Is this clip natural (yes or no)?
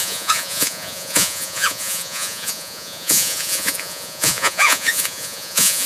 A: no